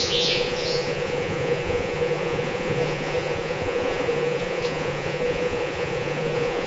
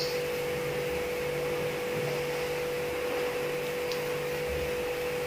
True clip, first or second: second